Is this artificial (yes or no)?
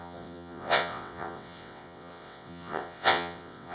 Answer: yes